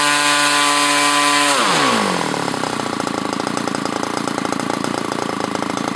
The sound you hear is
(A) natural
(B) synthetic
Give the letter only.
A